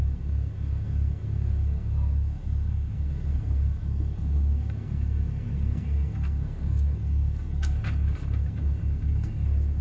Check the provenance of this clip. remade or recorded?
remade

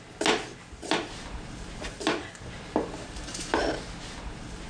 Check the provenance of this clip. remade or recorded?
recorded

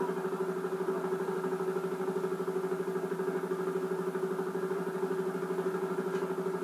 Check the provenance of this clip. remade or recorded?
recorded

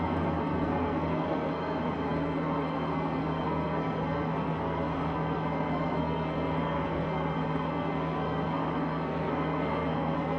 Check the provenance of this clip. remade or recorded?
remade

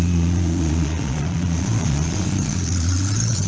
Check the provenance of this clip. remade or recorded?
remade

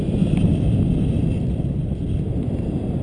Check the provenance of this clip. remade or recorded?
recorded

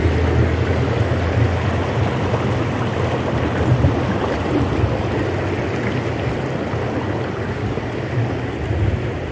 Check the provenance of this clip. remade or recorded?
recorded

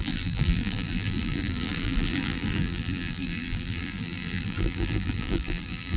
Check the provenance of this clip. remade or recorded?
remade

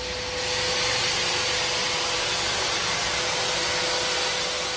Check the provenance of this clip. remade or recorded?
recorded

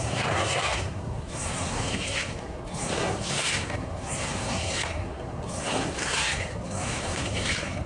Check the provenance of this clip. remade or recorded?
remade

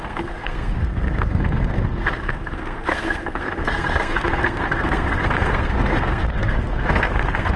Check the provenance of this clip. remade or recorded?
remade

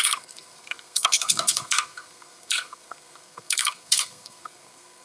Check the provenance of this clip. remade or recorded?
remade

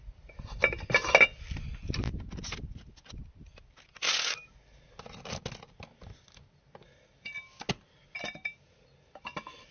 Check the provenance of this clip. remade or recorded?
recorded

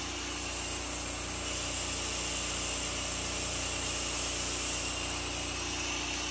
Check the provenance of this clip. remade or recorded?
recorded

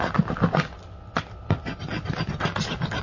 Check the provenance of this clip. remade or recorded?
recorded